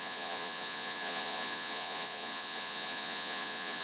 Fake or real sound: fake